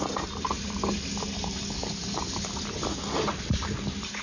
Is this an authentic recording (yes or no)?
yes